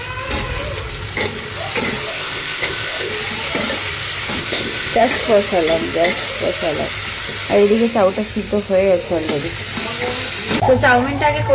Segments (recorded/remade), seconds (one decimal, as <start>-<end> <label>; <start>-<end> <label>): 0.0-2.1 recorded; 2.1-3.1 remade; 3.1-4.4 recorded; 4.4-5.0 remade; 5.0-11.5 recorded